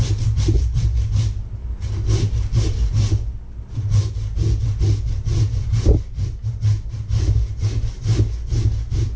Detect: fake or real real